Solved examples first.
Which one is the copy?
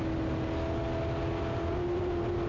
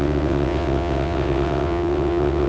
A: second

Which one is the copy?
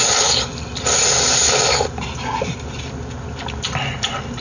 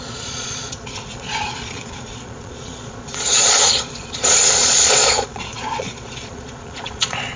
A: second